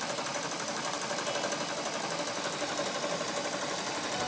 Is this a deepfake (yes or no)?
no